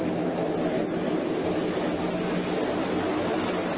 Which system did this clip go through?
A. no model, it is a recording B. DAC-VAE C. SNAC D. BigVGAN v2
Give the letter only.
A